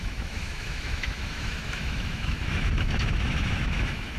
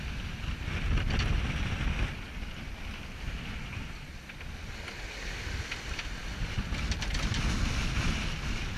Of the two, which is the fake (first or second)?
first